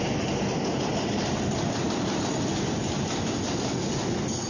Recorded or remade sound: recorded